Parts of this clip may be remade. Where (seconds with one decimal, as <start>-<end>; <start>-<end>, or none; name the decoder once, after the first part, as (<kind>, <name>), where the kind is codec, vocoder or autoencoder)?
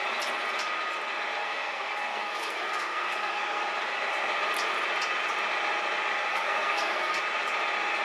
1.4-3.6 (codec, SNAC); 6.3-7.2